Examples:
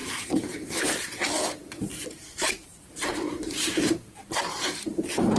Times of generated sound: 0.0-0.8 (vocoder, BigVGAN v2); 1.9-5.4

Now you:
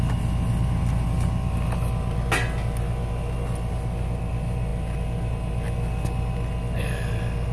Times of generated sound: none

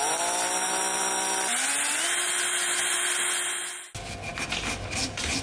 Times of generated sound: none

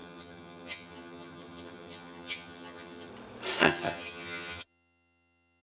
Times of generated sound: 0.0-3.1 (vocoder, HiFi-GAN); 3.6-5.6

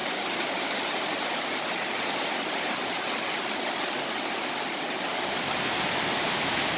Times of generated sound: 0.0-3.0 (vocoder, BigVGAN v2)